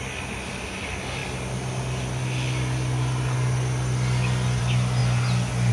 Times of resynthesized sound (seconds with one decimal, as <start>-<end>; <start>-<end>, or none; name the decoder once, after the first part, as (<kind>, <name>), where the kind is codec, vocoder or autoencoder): none